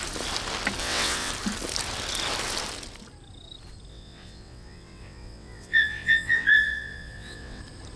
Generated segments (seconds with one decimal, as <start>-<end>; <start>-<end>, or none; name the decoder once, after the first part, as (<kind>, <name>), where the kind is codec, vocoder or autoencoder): 0.8-1.3 (vocoder, WaveNeXt); 3.9-7.6